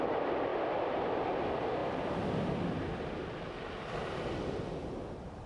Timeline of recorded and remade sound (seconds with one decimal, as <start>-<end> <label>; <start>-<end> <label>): 0.0-5.5 recorded

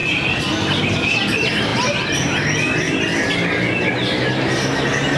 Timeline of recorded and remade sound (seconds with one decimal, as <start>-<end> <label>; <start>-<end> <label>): 0.0-5.2 recorded